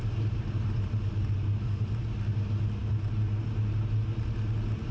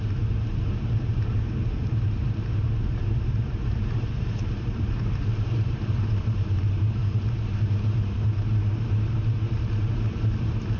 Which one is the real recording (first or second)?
first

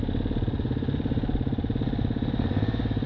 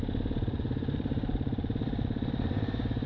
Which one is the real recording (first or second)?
first